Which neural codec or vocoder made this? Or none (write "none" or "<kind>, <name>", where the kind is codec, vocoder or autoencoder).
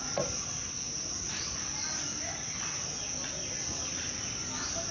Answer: none